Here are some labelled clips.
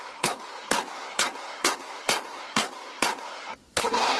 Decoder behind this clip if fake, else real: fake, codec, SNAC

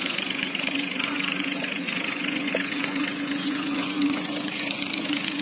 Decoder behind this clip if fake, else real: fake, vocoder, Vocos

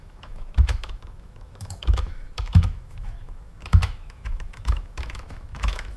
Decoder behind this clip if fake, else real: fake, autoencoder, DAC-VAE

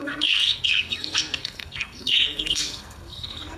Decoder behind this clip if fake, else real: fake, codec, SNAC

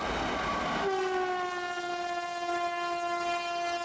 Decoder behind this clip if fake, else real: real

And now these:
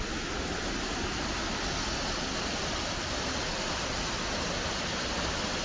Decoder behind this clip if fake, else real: real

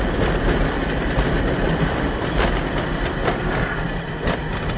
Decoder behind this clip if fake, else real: fake, vocoder, BigVGAN v2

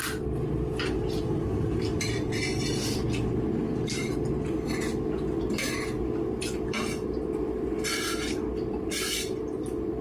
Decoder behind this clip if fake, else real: fake, vocoder, BigVGAN v2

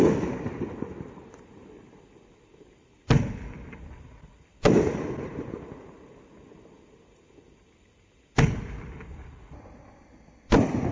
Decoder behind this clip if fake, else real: real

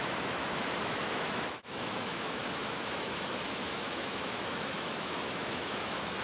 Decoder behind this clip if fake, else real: fake, autoencoder, DAC-VAE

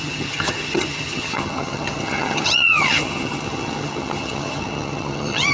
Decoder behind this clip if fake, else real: fake, vocoder, HiFi-GAN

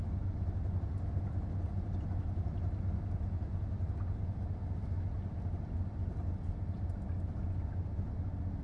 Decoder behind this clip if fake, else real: real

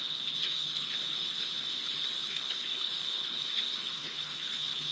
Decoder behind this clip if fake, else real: fake, codec, HILCodec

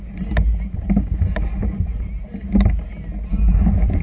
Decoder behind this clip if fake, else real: real